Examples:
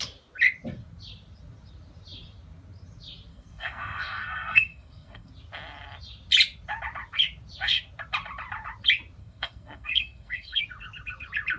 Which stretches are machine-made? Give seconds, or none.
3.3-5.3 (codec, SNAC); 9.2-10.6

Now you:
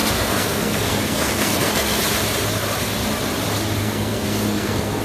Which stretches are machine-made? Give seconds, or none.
0.0-2.0 (codec, SNAC); 3.8-5.0

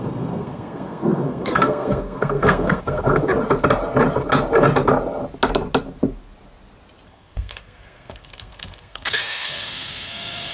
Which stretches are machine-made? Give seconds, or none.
0.0-3.2 (codec, SNAC); 7.1-10.5

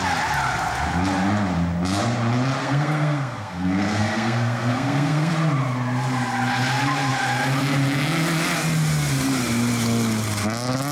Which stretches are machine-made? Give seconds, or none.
2.6-5.3 (codec, SNAC)

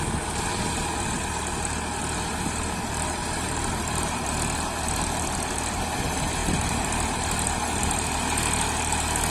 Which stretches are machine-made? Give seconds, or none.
none

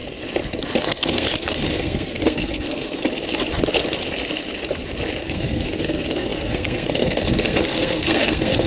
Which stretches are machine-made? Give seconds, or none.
0.8-3.0 (codec, SNAC); 5.2-8.7